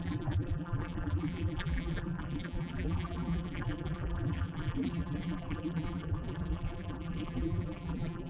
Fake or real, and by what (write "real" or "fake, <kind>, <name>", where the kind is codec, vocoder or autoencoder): fake, vocoder, BigVGAN v2